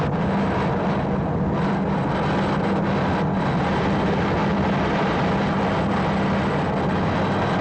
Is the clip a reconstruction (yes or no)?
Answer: no